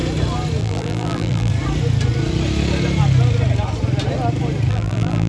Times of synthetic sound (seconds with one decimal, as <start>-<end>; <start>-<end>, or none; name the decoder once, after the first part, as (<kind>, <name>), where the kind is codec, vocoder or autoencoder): 0.6-1.5 (vocoder, BigVGAN v2); 4.7-5.3